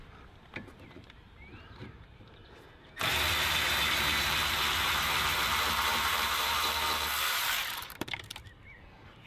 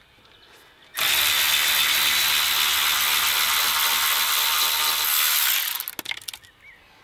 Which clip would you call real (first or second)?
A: second